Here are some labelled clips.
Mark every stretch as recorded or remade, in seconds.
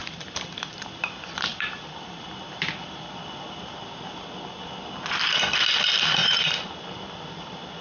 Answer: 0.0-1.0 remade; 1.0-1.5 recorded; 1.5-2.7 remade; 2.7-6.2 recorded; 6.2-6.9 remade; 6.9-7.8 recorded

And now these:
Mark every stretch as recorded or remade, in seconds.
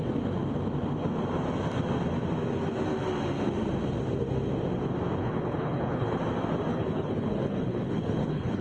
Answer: 0.0-5.2 recorded; 5.2-6.2 remade; 6.2-6.7 recorded; 6.7-8.6 remade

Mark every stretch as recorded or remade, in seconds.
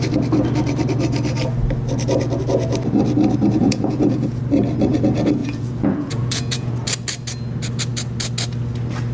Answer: 0.0-3.6 recorded; 3.6-4.4 remade; 4.4-5.4 recorded; 5.4-6.7 remade; 6.7-9.1 recorded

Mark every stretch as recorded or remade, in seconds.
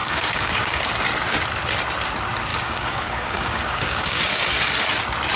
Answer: 0.0-0.8 remade; 0.8-2.5 recorded; 2.5-4.2 remade; 4.2-5.4 recorded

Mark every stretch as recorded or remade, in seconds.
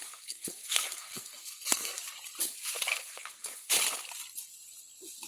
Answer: 0.0-2.0 remade; 2.0-2.9 recorded; 2.9-3.7 remade; 3.7-5.3 recorded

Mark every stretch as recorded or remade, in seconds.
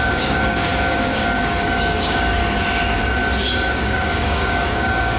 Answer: 0.0-2.4 remade; 2.4-3.7 recorded; 3.7-5.2 remade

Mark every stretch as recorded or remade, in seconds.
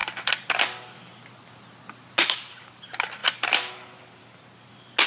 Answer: 0.0-5.1 recorded